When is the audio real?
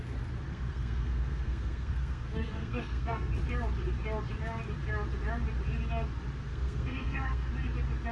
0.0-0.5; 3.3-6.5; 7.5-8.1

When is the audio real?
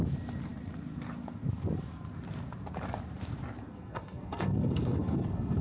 0.0-3.7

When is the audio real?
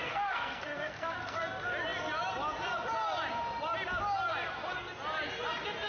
1.4-5.9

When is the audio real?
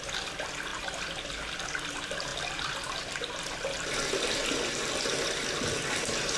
0.0-6.4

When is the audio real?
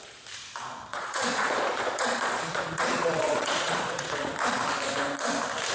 0.0-0.9; 4.3-5.7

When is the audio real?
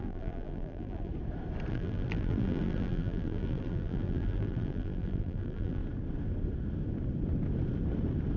1.1-1.7; 5.8-8.4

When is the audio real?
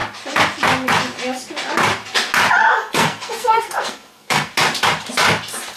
0.0-2.6; 4.5-5.8